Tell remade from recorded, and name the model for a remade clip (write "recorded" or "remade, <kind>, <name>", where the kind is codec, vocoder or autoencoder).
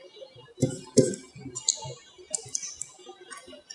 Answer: recorded